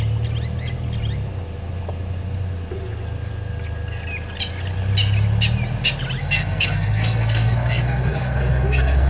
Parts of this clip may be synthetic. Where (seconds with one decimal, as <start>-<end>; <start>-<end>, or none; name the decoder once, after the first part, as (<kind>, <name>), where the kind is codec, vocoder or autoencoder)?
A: 6.2-9.1 (codec, SNAC)